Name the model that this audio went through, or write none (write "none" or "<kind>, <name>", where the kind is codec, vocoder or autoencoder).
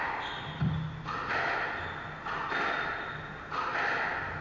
none